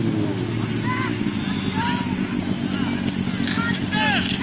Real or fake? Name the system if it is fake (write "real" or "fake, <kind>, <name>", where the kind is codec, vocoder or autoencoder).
real